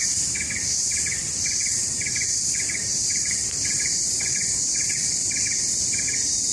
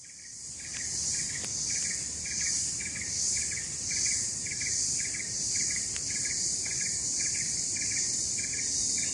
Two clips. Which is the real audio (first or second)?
first